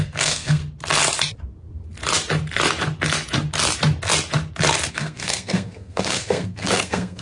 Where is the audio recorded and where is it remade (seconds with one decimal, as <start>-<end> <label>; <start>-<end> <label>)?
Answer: 0.0-0.6 remade; 0.6-4.9 recorded; 4.9-7.2 remade